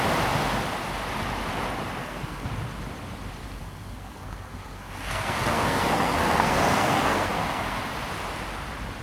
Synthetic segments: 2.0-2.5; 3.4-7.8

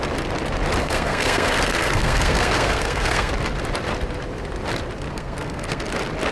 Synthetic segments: 0.8-3.3; 5.1-5.8

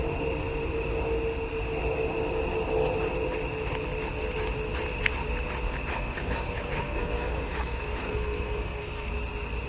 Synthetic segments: 5.9-9.1

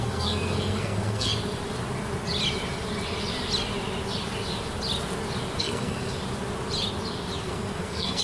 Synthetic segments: 0.0-1.3; 5.6-6.2; 7.4-8.2

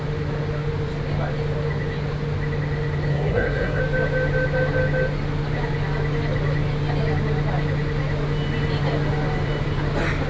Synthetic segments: 3.1-3.8

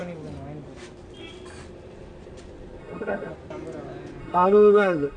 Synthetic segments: 2.8-3.3; 4.2-5.2

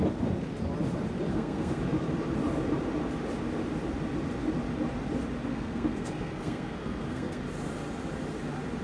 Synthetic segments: 1.3-1.8; 5.5-7.4

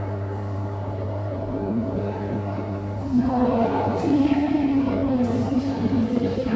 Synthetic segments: 0.0-6.6